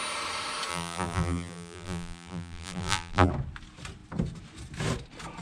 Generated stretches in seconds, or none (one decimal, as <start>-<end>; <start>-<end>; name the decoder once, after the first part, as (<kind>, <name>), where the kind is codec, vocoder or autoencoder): 0.7-3.3 (vocoder, BigVGAN v2)